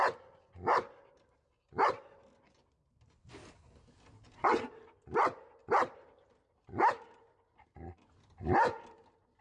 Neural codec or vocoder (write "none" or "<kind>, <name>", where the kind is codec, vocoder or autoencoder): none